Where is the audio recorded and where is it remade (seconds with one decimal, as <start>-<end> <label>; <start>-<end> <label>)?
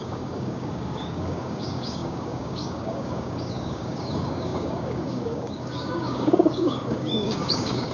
0.0-7.9 remade